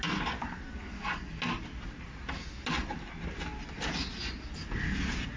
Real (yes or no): yes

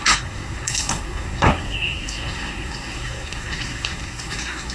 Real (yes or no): no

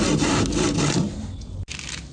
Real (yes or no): yes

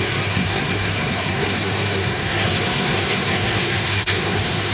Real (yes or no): no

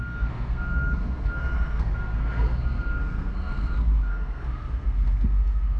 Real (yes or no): no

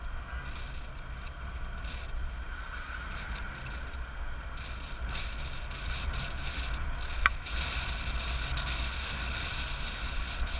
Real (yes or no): yes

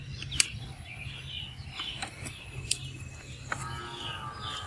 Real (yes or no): yes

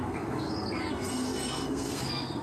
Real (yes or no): no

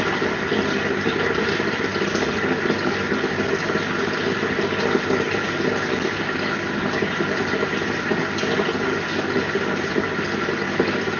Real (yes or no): yes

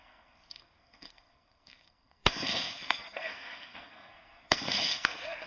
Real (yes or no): no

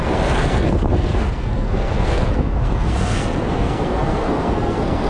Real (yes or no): no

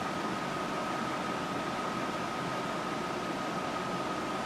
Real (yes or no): yes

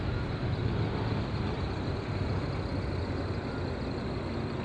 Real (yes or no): yes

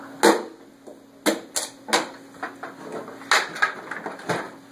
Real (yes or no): yes